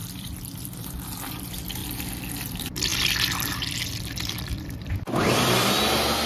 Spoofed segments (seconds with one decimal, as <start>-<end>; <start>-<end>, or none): 0.0-1.8; 2.5-2.9; 3.7-6.3